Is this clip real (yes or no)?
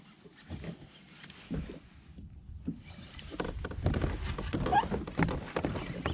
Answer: yes